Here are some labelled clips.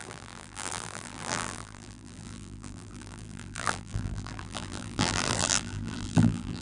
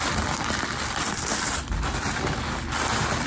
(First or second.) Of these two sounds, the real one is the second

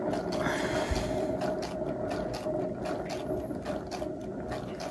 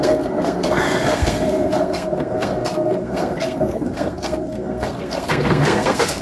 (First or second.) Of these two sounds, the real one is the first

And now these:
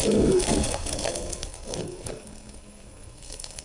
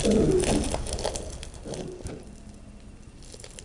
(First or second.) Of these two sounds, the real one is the second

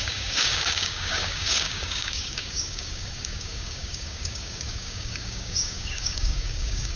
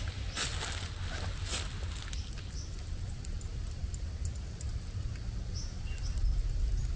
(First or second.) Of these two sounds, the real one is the second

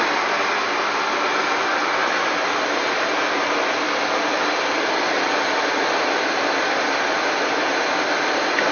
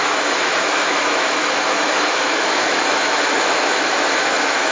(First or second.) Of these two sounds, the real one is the first